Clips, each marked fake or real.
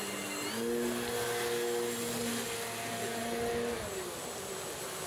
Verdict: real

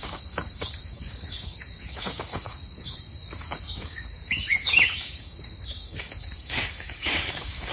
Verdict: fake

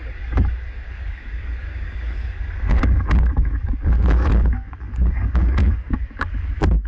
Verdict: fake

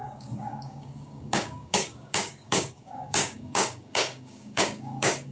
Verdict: fake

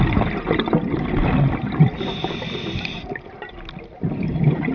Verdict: real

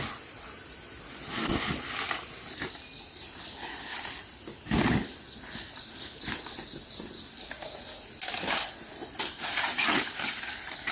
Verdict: real